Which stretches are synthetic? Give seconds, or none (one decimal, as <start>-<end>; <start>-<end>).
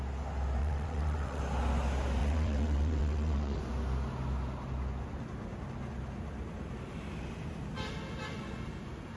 0.6-1.4; 2.2-3.6